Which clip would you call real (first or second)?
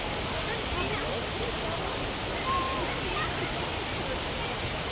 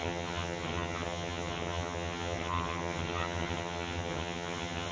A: first